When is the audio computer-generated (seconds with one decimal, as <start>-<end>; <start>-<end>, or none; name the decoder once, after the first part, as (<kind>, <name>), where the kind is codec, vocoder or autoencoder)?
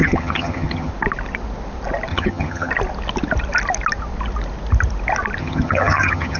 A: 0.0-0.9 (vocoder, HiFi-GAN); 2.1-2.7; 5.4-6.4